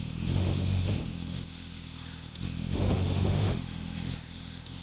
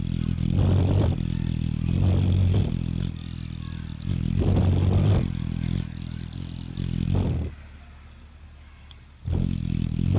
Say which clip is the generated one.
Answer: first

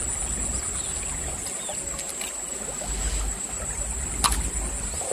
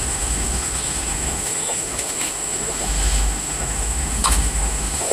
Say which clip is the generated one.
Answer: second